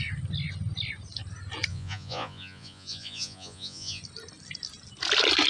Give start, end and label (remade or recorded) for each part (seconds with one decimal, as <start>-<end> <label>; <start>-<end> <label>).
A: 0.0-1.7 recorded; 1.7-4.0 remade; 4.0-5.5 recorded

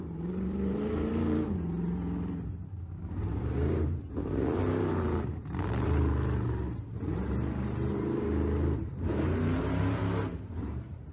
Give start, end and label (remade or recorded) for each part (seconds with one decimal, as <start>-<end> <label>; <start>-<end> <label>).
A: 0.0-10.0 remade; 10.0-10.5 recorded; 10.5-11.1 remade

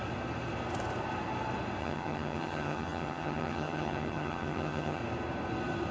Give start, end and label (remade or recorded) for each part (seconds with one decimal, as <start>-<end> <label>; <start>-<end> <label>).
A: 0.0-1.8 recorded; 1.8-5.0 remade; 5.0-5.9 recorded

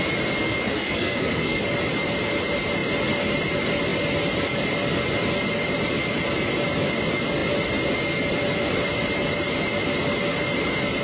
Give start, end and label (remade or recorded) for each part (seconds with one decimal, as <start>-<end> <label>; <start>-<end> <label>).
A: 0.0-0.4 recorded; 0.4-1.6 remade; 1.6-11.0 recorded

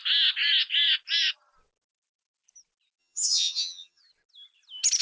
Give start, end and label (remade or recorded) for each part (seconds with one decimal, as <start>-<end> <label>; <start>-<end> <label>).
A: 0.0-3.0 recorded; 3.0-4.0 remade; 4.0-5.0 recorded

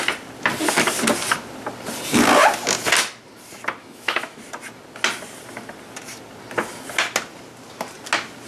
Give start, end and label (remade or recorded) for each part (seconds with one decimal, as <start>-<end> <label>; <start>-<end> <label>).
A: 0.0-3.8 recorded; 3.8-4.4 remade; 4.4-8.5 recorded

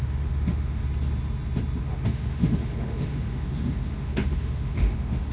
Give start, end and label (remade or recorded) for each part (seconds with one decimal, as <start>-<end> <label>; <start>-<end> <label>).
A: 0.0-0.8 remade; 0.8-1.8 recorded; 1.8-5.3 remade